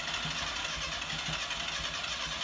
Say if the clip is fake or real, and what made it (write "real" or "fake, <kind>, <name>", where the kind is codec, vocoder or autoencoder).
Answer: real